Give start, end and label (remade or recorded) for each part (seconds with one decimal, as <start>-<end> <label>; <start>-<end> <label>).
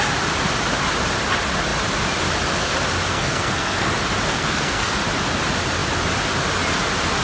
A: 0.0-3.1 recorded; 3.1-3.9 remade; 3.9-4.3 recorded; 4.3-5.0 remade; 5.0-7.2 recorded